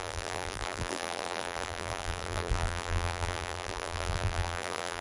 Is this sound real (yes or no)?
no